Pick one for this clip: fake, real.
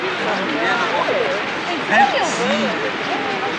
real